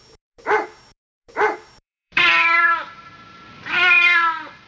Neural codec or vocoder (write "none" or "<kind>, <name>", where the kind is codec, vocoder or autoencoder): vocoder, BigVGAN v2